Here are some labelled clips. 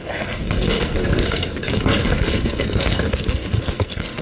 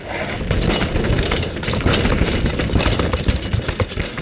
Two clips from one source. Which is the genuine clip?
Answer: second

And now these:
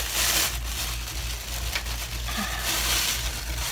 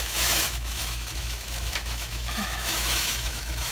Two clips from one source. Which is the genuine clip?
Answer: first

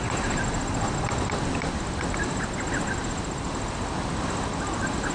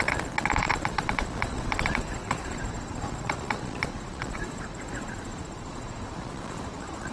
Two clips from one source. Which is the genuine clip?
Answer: first